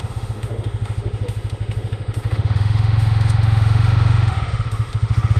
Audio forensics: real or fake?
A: fake